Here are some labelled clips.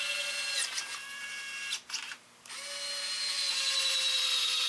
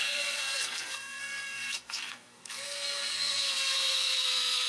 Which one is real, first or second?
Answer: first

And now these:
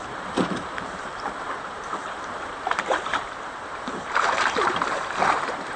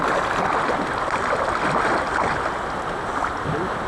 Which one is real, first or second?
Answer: second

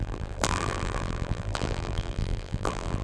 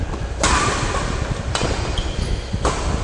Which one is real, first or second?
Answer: second